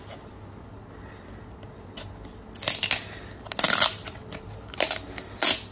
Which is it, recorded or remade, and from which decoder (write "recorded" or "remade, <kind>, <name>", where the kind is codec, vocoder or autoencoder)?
recorded